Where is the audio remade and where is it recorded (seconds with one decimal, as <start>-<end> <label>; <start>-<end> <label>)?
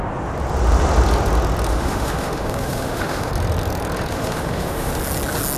0.0-1.7 recorded; 1.7-3.3 remade; 3.3-4.1 recorded; 4.1-4.9 remade; 4.9-5.6 recorded